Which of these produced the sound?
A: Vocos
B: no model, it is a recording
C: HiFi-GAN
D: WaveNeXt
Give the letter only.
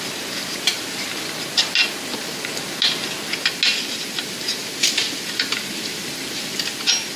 B